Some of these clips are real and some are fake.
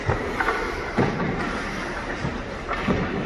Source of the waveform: real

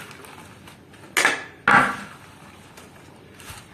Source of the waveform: real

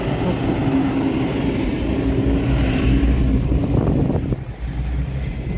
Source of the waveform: real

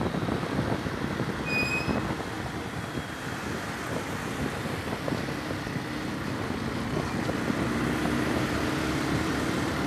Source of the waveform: real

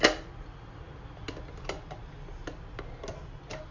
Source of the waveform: real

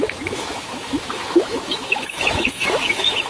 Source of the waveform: fake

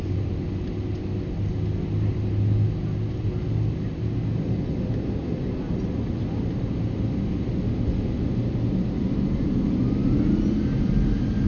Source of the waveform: real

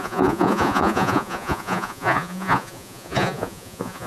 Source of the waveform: fake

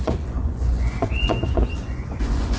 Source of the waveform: fake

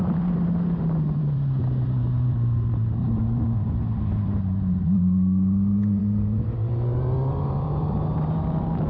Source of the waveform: fake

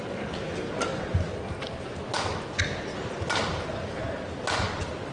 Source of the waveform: real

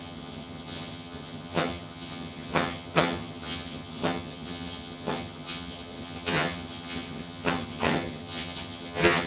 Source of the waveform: fake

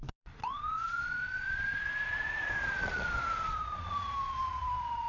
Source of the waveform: fake